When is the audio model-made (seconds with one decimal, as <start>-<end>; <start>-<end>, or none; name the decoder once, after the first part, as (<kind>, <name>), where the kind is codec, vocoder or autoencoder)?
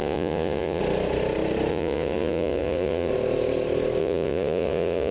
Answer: 0.0-0.8 (vocoder, Vocos); 1.7-3.1; 4.0-5.1